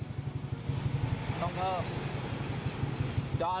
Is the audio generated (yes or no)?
no